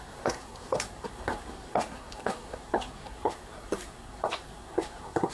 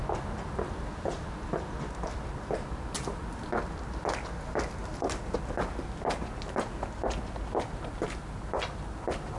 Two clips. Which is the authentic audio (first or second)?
second